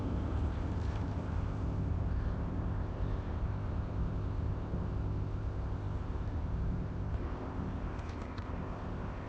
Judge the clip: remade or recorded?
remade